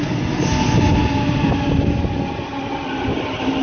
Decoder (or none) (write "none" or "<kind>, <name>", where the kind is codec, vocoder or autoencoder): none